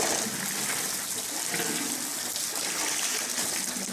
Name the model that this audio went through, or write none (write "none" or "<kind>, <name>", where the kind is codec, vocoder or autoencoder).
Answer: none